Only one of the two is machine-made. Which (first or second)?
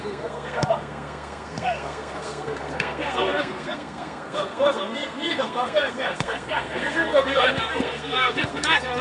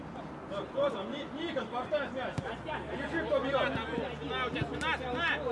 first